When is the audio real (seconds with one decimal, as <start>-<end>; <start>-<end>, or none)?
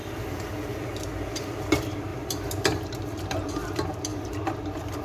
0.5-2.1; 3.5-4.1